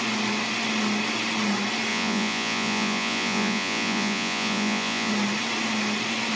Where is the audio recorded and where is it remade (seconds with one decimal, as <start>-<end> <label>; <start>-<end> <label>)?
0.0-1.9 recorded; 1.9-5.1 remade; 5.1-6.4 recorded